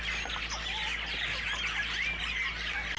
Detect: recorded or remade recorded